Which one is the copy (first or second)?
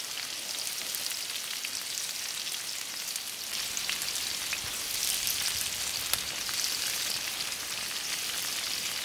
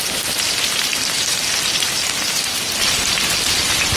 second